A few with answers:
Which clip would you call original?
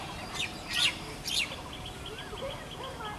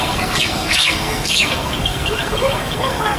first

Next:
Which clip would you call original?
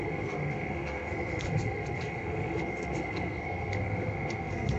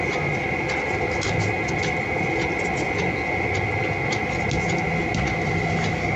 second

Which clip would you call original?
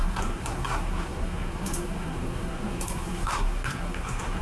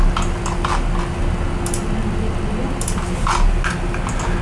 second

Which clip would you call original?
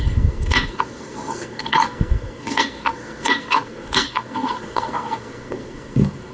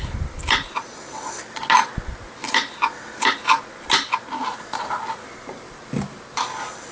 second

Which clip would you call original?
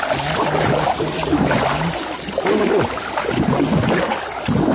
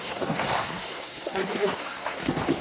first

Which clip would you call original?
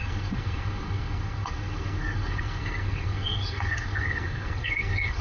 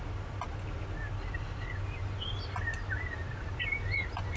second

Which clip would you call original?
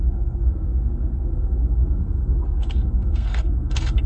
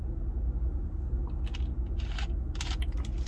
second